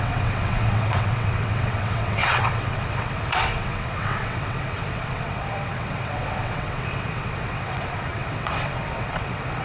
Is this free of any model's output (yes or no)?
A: no